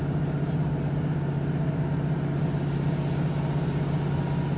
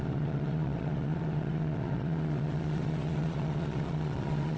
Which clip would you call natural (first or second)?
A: first